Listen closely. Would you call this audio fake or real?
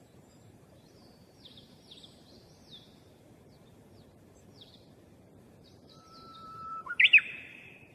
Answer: fake